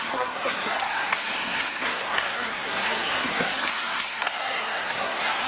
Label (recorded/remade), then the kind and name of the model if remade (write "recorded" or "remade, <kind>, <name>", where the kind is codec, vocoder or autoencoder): remade, codec, SNAC